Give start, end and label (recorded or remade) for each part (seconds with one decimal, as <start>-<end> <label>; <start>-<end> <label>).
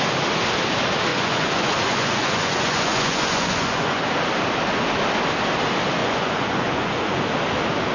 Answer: 0.0-1.1 recorded; 1.1-4.0 remade; 4.0-6.0 recorded; 6.0-7.2 remade; 7.2-7.9 recorded